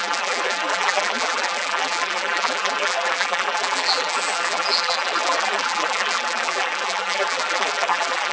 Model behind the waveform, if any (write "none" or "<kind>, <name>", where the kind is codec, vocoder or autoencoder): vocoder, BigVGAN v2